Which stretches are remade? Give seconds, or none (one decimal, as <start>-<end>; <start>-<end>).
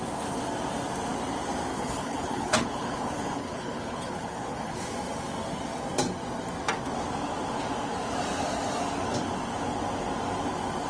1.7-4.8